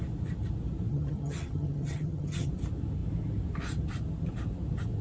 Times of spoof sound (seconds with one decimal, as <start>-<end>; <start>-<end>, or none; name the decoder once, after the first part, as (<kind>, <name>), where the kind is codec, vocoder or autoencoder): 0.9-2.5 (vocoder, HiFi-GAN)